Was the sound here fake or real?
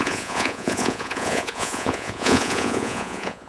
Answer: fake